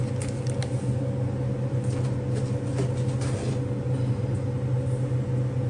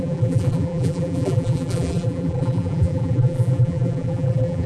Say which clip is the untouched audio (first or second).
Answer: first